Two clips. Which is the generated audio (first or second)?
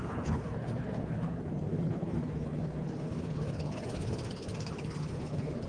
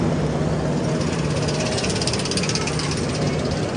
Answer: first